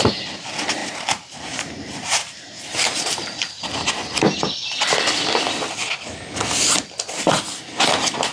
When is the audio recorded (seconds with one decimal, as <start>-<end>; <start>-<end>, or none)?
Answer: 0.0-0.8; 3.6-8.3